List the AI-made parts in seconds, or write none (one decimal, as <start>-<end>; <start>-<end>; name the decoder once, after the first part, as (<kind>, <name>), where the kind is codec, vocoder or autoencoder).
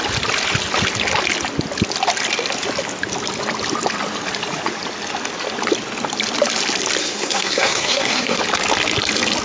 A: 7.0-8.4 (codec, SNAC)